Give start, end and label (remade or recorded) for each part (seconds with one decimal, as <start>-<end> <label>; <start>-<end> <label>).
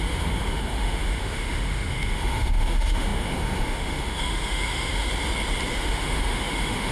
0.0-5.1 remade; 5.1-5.7 recorded; 5.7-6.9 remade